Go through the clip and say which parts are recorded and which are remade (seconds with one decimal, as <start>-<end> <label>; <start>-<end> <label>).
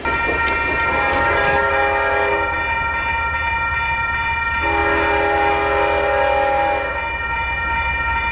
0.0-1.1 recorded; 1.1-1.7 remade; 1.7-8.3 recorded